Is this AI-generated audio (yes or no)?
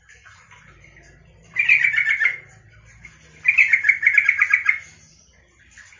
no